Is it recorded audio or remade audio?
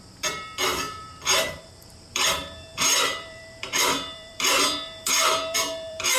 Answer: remade